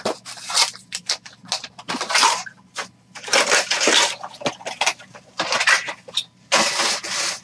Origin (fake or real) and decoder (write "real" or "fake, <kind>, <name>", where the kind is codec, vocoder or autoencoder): real